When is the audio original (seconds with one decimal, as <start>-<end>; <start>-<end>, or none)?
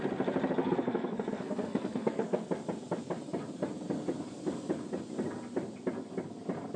0.0-0.6; 2.5-6.8